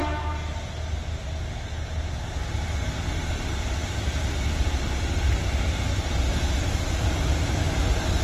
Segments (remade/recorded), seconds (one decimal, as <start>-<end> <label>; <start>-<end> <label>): 0.0-8.2 recorded